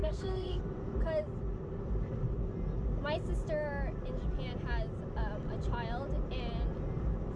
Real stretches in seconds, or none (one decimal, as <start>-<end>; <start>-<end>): 0.6-7.4